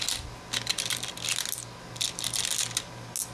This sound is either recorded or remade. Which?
recorded